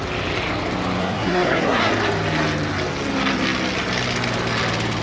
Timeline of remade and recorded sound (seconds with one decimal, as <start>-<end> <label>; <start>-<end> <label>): 0.0-1.0 recorded; 1.0-1.9 remade; 1.9-5.0 recorded